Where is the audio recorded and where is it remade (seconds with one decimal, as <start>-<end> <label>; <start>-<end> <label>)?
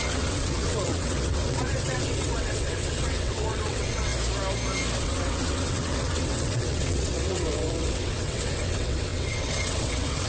0.0-4.1 remade; 4.1-5.0 recorded; 5.0-10.3 remade